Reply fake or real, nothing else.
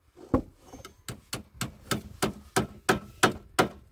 real